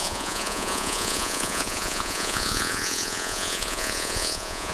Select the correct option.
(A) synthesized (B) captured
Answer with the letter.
A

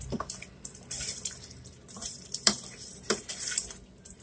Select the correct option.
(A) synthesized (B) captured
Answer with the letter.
A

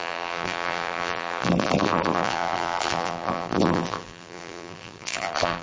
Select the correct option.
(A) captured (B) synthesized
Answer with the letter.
B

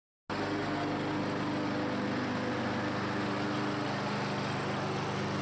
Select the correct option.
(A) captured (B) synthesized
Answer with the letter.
A